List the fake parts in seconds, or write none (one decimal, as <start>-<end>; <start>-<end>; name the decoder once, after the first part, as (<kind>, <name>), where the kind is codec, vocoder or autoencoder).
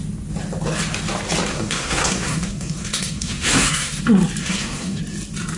1.5-4.0 (codec, SNAC); 4.4-5.0